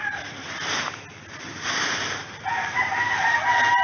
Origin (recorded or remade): recorded